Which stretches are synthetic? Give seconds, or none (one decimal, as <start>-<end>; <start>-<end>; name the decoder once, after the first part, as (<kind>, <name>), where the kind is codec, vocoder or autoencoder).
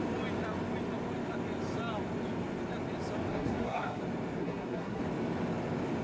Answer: 3.3-4.0 (codec, SNAC); 4.4-5.0